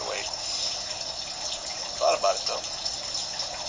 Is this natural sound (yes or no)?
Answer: yes